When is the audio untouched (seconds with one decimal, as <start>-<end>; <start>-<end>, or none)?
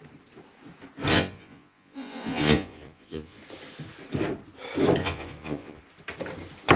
0.0-1.1; 3.4-5.0; 5.8-6.8